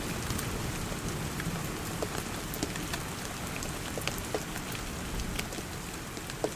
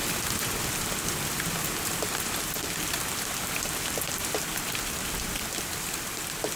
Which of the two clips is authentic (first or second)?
first